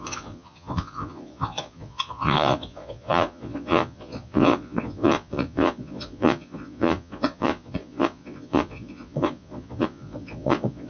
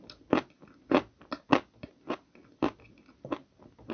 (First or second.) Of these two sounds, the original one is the second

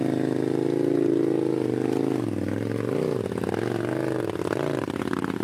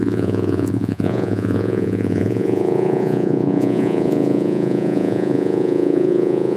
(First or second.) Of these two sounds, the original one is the first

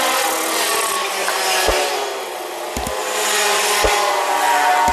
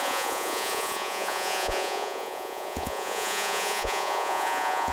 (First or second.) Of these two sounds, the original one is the first